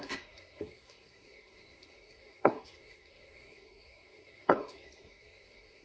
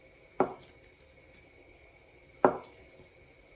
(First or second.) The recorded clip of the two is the second